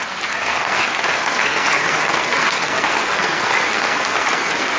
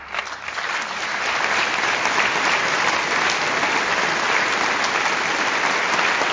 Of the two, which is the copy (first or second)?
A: first